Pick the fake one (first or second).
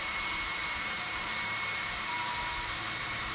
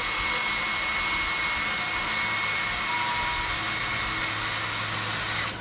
first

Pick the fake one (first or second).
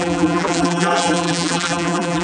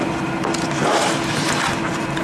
first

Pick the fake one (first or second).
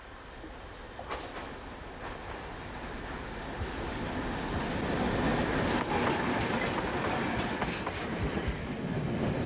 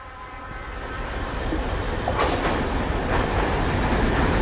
second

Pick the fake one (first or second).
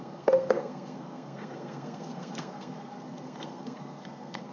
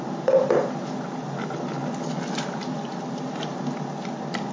first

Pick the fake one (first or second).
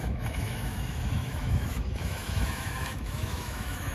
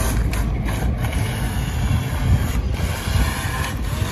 first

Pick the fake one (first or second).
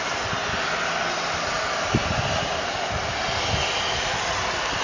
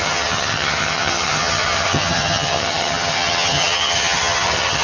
second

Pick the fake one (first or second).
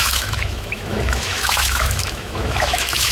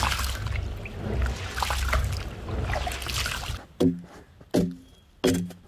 first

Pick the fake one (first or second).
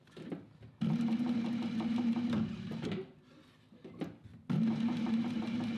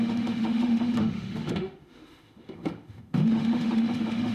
second